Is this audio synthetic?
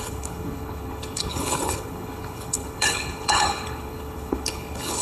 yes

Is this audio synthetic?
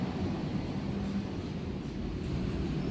no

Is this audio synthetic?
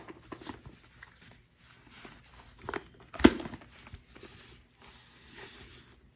no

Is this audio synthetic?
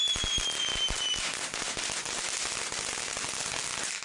no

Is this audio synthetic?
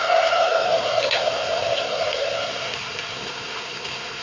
yes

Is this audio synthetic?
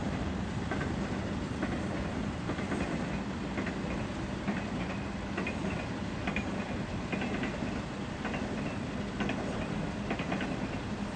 no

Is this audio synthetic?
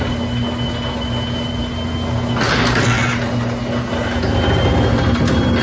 no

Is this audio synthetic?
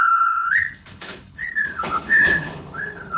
yes